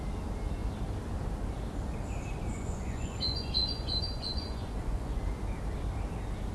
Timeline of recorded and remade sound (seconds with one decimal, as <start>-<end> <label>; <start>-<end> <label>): 0.0-2.5 recorded; 2.5-5.2 remade; 5.2-6.5 recorded